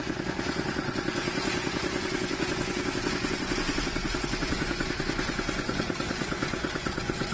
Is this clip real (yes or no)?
no